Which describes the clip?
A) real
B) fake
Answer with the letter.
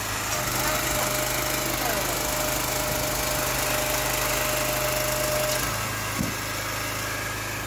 A